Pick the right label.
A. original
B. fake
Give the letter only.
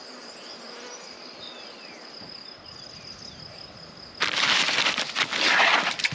A